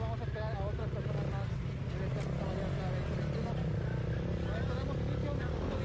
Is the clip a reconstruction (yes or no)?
no